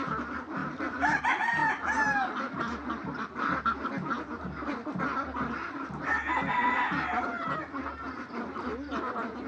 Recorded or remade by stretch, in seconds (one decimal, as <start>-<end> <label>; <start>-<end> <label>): 0.0-9.5 recorded